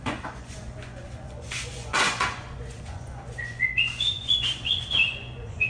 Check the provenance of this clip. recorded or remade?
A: remade